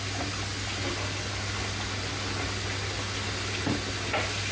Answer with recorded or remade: recorded